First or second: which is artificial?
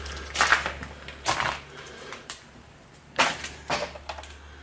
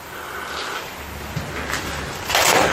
first